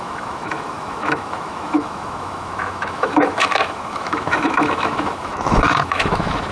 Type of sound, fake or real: fake